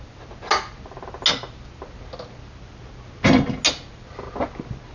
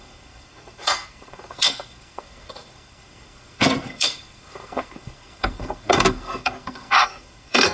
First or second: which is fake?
second